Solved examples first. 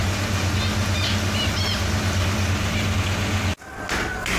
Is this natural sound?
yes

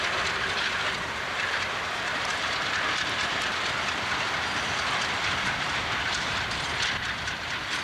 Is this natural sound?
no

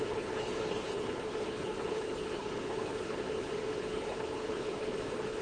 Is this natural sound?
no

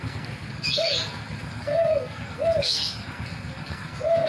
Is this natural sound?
no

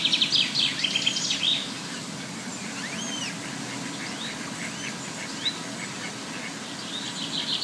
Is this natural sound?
yes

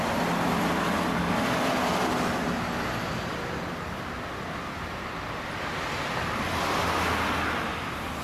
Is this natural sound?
yes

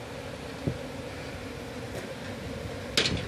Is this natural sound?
yes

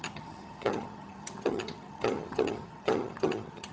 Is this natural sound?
no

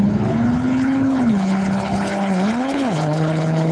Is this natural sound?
no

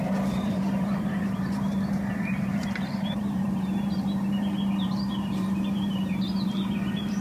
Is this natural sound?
no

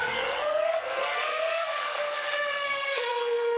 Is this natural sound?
no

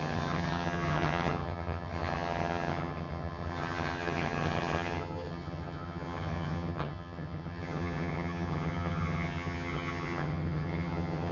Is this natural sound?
no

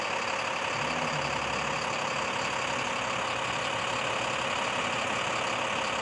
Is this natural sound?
yes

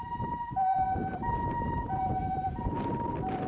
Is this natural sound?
no